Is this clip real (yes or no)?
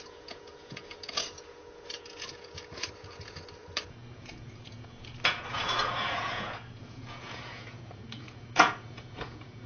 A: no